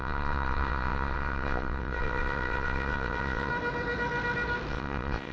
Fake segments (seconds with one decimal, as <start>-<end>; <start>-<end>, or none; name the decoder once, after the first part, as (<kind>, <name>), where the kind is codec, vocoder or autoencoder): 0.0-3.5 (vocoder, WaveNeXt); 4.7-5.3